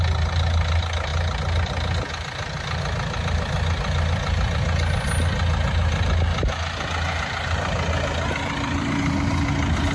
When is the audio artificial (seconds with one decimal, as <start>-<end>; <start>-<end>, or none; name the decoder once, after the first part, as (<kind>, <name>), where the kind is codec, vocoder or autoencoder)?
none